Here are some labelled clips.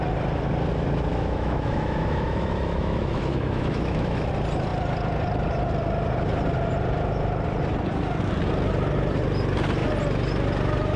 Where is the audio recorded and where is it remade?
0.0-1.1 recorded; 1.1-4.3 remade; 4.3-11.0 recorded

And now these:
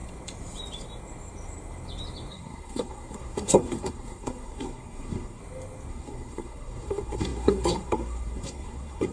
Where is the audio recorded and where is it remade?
0.0-2.3 recorded; 2.3-5.4 remade; 5.4-5.9 recorded; 5.9-9.1 remade

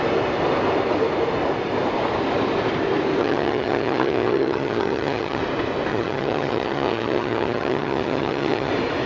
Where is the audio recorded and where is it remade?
0.0-3.2 recorded; 3.2-5.4 remade; 5.4-5.9 recorded; 5.9-8.7 remade; 8.7-9.1 recorded

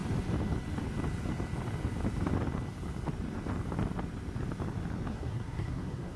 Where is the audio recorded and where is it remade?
0.0-5.1 recorded; 5.1-6.2 remade

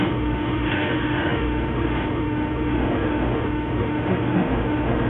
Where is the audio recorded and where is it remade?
0.0-5.1 remade

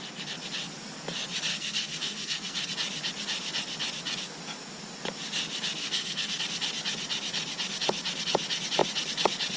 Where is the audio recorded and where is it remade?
0.0-1.5 recorded; 1.5-2.7 remade; 2.7-5.8 recorded; 5.8-6.4 remade; 6.4-9.6 recorded